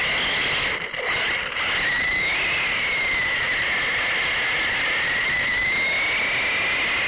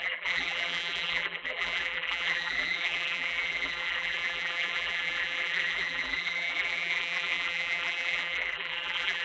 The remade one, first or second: second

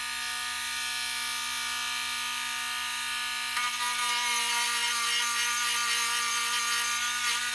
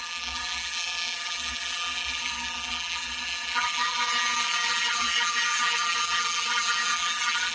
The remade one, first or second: second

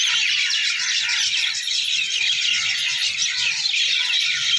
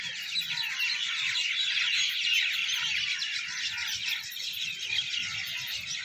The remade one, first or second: first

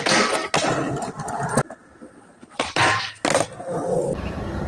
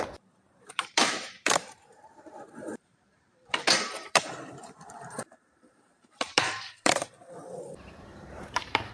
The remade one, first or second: second